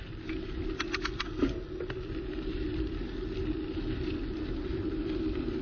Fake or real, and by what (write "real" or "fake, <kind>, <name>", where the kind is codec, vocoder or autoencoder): real